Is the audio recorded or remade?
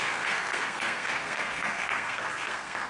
remade